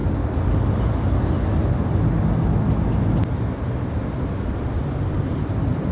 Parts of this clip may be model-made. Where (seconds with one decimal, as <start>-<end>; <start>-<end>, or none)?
none

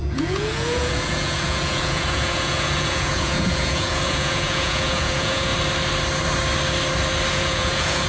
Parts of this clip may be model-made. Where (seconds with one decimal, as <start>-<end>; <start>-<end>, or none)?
0.0-5.5; 7.3-8.1

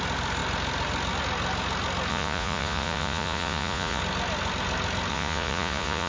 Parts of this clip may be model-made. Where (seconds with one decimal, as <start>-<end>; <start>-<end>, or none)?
2.1-4.0; 5.1-6.1